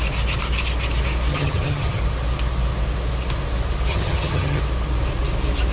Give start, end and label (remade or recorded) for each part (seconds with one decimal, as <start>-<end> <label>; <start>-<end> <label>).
0.0-1.3 recorded; 1.3-2.0 remade; 2.0-3.9 recorded; 3.9-4.6 remade; 4.6-5.7 recorded